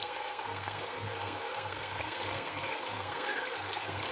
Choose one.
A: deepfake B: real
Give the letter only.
A